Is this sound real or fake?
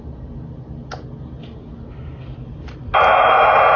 real